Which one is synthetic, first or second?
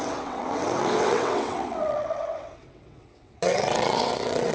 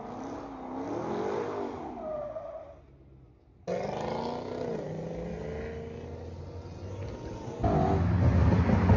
first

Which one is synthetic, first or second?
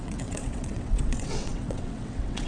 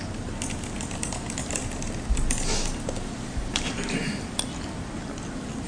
first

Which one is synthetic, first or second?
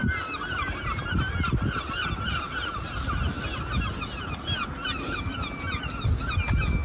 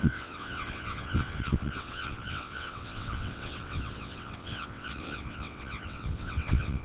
second